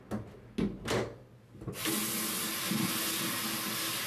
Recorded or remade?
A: recorded